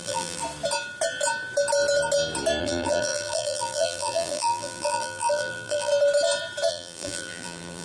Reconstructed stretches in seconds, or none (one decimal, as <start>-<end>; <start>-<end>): 0.0-0.4; 2.6-5.9; 6.7-7.8

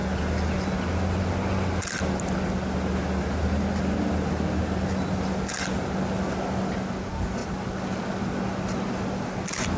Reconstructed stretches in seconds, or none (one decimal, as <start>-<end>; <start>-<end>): none

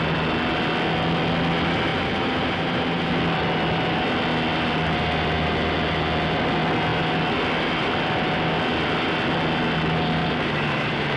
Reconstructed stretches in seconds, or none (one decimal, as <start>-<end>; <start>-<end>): 1.9-3.1; 10.2-11.2

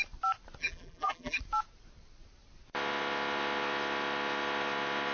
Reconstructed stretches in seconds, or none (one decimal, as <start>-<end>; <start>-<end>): 0.6-1.4

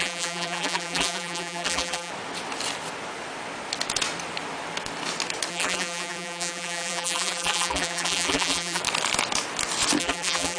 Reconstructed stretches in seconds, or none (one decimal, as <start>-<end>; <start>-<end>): 0.0-2.1; 5.5-8.8; 10.0-10.6

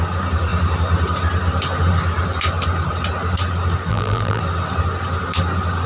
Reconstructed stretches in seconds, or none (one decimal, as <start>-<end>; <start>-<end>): 3.9-4.4

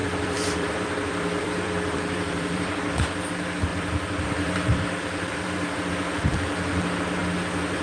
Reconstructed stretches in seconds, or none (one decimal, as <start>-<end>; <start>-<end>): 0.0-3.3; 3.7-5.9

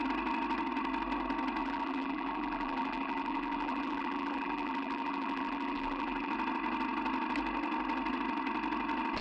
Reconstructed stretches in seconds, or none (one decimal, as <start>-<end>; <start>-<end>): 1.6-6.3